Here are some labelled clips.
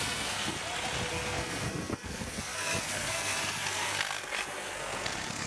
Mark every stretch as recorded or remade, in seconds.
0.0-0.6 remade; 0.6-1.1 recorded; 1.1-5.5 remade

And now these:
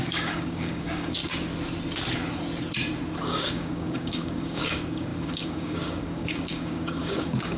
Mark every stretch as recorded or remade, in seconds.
0.0-1.2 remade; 1.2-3.2 recorded; 3.2-7.6 remade

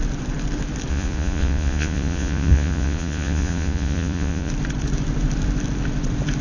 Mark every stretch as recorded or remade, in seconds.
0.0-0.9 recorded; 0.9-4.5 remade; 4.5-6.4 recorded

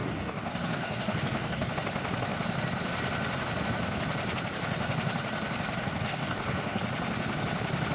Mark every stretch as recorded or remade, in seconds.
0.0-1.7 remade; 1.7-5.8 recorded; 5.8-6.8 remade; 6.8-7.9 recorded